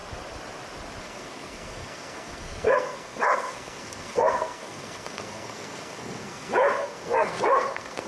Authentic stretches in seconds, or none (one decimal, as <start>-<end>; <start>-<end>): 0.0-1.0